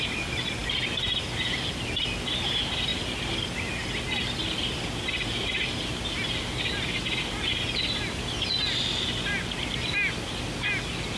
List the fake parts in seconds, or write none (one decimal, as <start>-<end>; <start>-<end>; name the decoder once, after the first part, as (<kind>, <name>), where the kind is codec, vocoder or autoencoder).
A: none